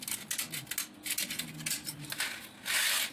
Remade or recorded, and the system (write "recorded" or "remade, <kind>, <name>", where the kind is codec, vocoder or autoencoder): recorded